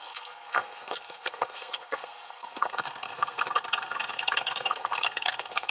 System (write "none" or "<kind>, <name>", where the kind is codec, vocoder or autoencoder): codec, SNAC